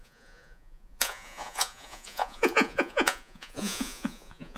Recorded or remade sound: remade